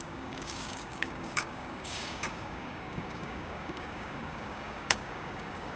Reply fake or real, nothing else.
fake